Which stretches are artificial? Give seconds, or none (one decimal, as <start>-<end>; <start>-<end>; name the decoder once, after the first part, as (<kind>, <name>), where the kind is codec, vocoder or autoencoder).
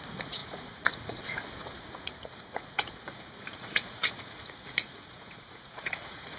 0.0-6.4 (vocoder, Vocos)